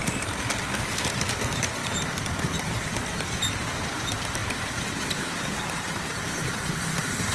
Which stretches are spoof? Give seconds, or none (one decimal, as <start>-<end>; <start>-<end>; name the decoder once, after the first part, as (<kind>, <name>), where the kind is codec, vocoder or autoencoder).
0.9-1.8 (vocoder, BigVGAN v2); 2.4-7.3

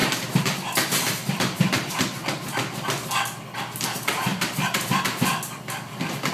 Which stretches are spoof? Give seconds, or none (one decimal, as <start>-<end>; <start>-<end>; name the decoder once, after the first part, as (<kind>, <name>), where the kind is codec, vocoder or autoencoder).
0.0-1.9 (vocoder, BigVGAN v2); 4.3-6.3

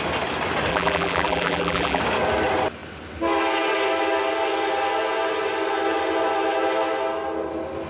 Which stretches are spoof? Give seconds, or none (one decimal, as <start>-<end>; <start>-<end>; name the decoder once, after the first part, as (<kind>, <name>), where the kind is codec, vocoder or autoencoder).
0.7-2.0 (vocoder, BigVGAN v2)

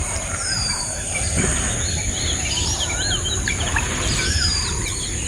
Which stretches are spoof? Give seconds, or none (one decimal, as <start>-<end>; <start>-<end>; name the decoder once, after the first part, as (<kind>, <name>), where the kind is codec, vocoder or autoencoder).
0.0-1.5 (vocoder, BigVGAN v2); 2.8-5.3

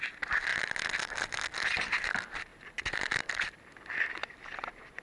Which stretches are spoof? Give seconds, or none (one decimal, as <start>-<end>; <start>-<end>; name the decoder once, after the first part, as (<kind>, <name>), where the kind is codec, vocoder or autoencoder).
none